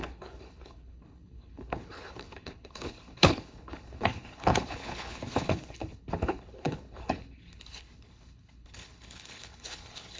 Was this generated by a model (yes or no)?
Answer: yes